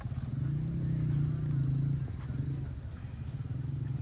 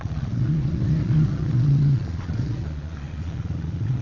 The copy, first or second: second